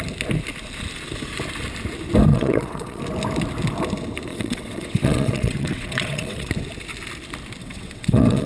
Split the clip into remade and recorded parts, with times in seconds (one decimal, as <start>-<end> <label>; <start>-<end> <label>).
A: 0.0-2.3 recorded; 2.3-3.0 remade; 3.0-4.3 recorded; 4.3-6.5 remade; 6.5-7.6 recorded; 7.6-8.5 remade